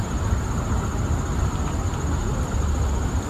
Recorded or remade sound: recorded